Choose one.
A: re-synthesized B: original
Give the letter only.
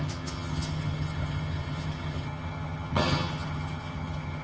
A